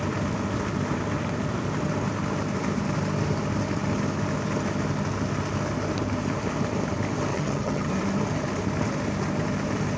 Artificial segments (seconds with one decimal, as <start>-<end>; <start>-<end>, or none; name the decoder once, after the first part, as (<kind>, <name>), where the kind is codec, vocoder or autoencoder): 7.3-7.9 (vocoder, HiFi-GAN)